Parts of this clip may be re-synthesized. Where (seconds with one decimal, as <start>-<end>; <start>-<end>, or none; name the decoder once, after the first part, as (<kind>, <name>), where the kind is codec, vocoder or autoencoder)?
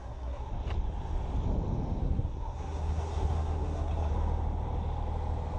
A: 0.0-0.5 (codec, SNAC); 2.0-4.1